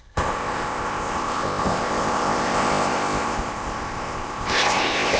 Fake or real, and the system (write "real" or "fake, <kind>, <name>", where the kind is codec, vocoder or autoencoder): fake, codec, ZipCodec